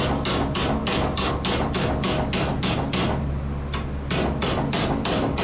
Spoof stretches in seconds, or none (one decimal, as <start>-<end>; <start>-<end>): none